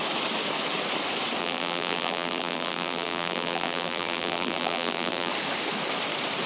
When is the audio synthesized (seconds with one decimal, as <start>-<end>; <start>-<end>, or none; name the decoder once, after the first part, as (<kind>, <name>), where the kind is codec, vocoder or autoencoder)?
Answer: 1.4-5.3 (vocoder, BigVGAN v2)